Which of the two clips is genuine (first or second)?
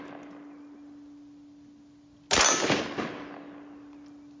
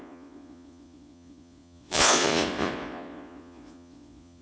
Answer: first